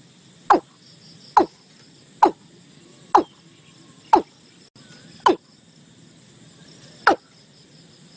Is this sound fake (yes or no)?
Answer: no